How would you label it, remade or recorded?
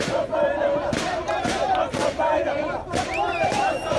remade